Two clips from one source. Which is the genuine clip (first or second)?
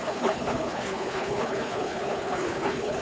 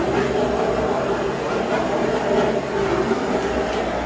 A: second